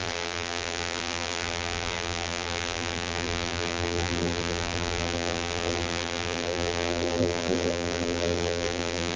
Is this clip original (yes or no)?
no